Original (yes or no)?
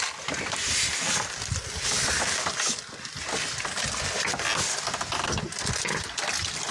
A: yes